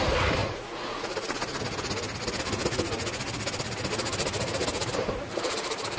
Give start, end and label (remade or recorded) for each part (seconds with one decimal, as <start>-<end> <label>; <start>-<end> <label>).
0.0-0.4 recorded; 0.4-1.6 remade; 1.6-6.0 recorded